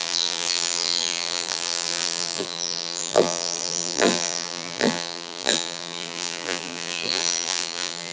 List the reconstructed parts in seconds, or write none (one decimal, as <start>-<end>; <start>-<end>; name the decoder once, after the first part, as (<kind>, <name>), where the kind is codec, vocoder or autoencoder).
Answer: 0.0-8.1 (vocoder, BigVGAN v2)